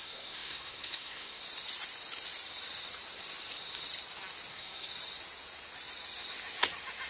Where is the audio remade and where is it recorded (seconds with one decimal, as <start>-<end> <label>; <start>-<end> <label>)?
0.0-1.4 remade; 1.4-4.5 recorded; 4.5-4.9 remade; 4.9-7.1 recorded